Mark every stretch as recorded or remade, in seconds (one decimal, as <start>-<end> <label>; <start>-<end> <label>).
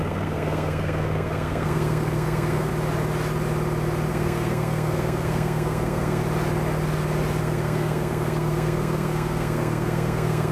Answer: 0.0-2.7 remade; 2.7-4.1 recorded; 4.1-6.2 remade; 6.2-7.4 recorded; 7.4-10.5 remade